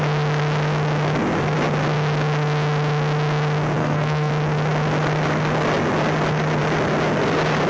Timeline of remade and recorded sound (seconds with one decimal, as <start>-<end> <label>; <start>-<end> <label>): 0.0-3.8 recorded; 3.8-4.3 remade; 4.3-7.7 recorded